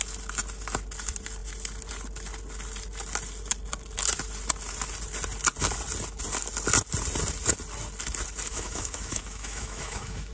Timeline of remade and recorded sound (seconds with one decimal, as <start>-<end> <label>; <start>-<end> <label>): 0.0-8.5 recorded; 8.5-10.3 remade